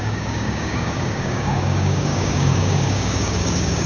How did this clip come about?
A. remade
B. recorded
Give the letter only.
A